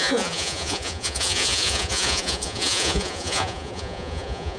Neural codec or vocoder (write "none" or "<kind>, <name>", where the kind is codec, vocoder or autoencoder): vocoder, Vocos